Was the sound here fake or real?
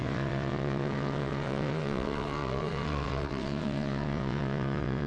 fake